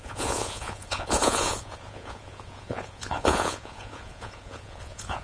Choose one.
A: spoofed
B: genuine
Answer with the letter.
A